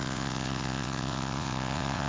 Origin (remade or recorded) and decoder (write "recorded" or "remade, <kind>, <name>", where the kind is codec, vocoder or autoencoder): remade, vocoder, WaveNeXt